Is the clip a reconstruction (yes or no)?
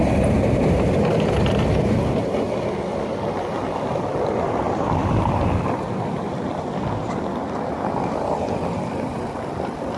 no